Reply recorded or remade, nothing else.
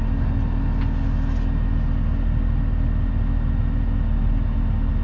recorded